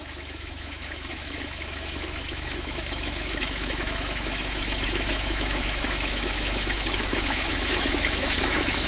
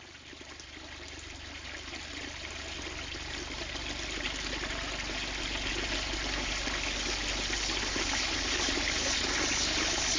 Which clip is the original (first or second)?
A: second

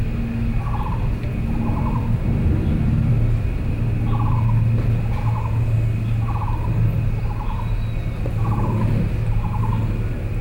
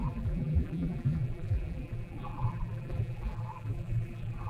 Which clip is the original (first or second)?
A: first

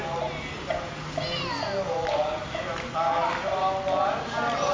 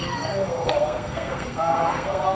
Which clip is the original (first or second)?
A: first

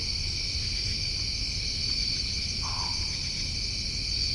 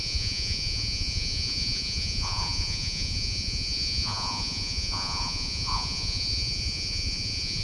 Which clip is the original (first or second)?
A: first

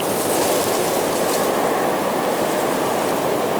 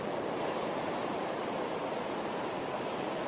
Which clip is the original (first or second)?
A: first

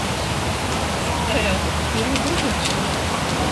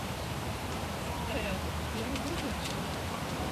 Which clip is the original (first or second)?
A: first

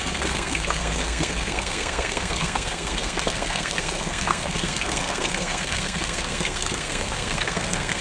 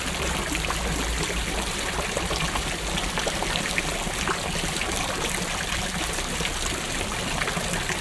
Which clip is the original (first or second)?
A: second